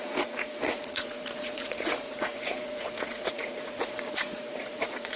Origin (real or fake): fake